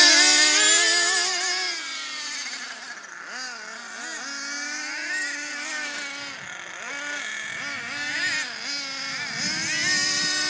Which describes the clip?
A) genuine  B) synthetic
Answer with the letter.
A